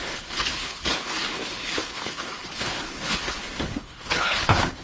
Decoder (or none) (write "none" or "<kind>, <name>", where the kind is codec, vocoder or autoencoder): codec, HILCodec